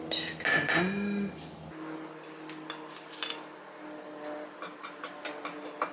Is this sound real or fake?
real